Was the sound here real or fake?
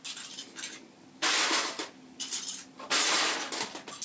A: real